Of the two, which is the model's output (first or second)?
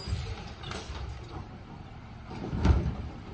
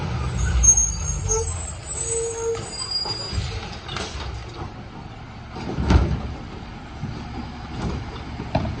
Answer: first